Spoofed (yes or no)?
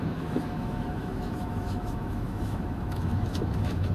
yes